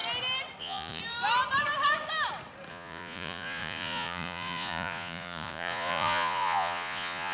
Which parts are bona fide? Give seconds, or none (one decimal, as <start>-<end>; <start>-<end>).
0.0-0.6; 1.0-2.7

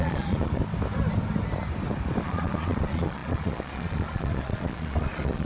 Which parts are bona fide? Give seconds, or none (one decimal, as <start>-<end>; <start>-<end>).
0.6-2.2

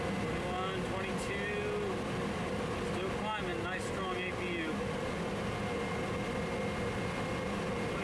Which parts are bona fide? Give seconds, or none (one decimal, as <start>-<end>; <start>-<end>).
0.0-8.0

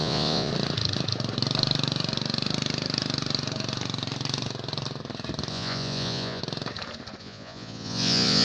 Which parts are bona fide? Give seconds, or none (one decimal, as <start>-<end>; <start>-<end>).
0.5-5.5; 6.4-7.2

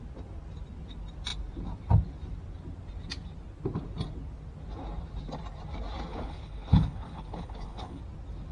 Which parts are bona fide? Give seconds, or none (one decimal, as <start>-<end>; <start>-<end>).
0.0-6.1; 8.0-8.5

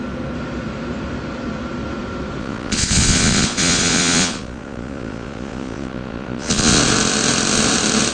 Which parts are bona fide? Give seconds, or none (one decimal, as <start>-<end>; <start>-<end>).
0.0-2.4; 6.8-8.1

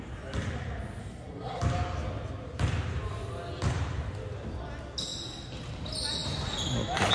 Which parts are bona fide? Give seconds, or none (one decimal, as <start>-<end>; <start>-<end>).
0.0-1.0; 1.6-7.1

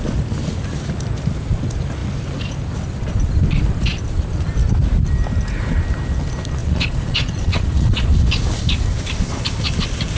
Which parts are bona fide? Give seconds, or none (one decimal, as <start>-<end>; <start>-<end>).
0.0-6.6; 8.1-10.2